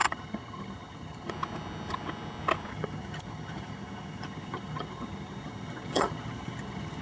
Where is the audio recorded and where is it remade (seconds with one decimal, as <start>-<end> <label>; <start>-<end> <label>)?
0.0-1.3 remade; 1.3-2.7 recorded; 2.7-7.0 remade